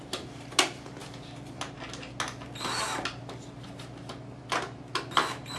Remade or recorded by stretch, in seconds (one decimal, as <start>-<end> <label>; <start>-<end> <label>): 0.0-5.6 recorded

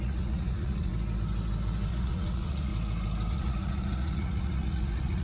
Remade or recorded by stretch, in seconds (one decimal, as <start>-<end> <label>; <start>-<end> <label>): 0.0-0.9 remade; 0.9-1.9 recorded; 1.9-2.7 remade; 2.7-3.3 recorded; 3.3-5.2 remade

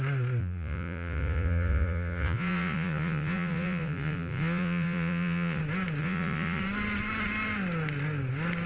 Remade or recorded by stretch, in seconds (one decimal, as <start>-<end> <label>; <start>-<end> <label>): 0.0-0.4 recorded; 0.4-5.6 remade; 5.6-6.0 recorded; 6.0-6.6 remade; 6.6-8.7 recorded

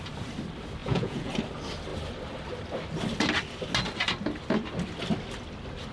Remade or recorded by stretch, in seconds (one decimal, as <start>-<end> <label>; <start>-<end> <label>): 0.0-0.8 recorded; 0.8-1.3 remade; 1.3-5.9 recorded

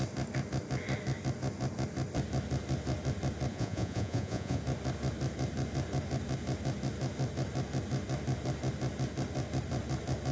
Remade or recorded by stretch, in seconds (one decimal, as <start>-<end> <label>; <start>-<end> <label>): 0.0-3.5 recorded; 3.5-4.6 remade; 4.6-10.3 recorded

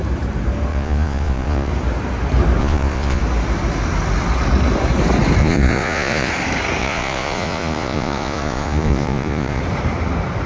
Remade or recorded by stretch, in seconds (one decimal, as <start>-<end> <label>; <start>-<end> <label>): 0.0-0.7 recorded; 0.7-1.7 remade; 1.7-2.6 recorded; 2.6-3.2 remade; 3.2-5.4 recorded; 5.4-6.3 remade; 6.3-6.8 recorded; 6.8-9.6 remade; 9.6-10.5 recorded

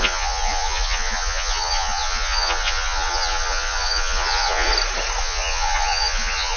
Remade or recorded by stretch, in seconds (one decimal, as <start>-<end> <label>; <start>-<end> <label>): 0.0-4.7 remade; 4.7-5.2 recorded; 5.2-6.6 remade

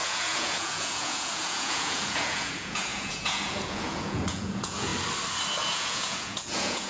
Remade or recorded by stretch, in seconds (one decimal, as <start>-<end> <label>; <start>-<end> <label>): 0.0-4.9 remade; 4.9-5.7 recorded; 5.7-6.9 remade